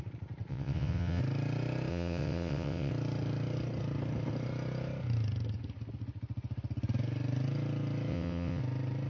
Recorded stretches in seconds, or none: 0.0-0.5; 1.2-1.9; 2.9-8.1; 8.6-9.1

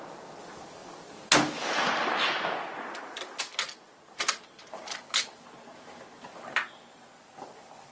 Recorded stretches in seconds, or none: 0.0-7.9

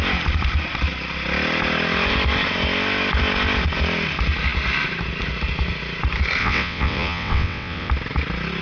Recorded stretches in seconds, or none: 0.0-6.4; 7.9-8.6